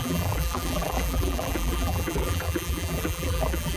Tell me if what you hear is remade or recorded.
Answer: remade